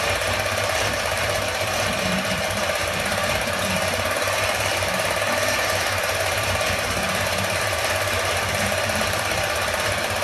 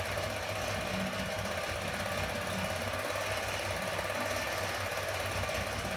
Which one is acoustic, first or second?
second